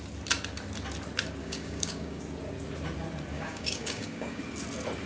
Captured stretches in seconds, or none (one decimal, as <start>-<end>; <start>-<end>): 0.0-1.4; 2.2-3.3; 4.4-5.1